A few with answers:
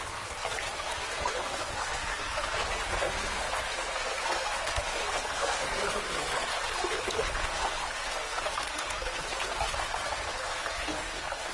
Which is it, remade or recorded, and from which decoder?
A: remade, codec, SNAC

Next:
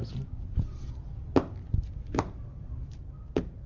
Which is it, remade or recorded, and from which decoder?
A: recorded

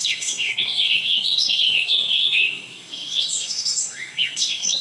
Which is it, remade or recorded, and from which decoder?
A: remade, codec, SNAC